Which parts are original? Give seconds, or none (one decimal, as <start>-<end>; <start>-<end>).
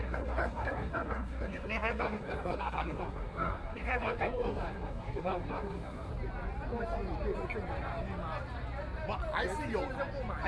6.1-10.5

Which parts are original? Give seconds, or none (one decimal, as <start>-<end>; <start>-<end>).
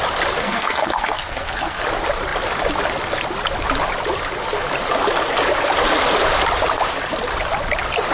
0.0-0.4; 1.8-8.1